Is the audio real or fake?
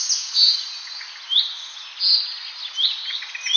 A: real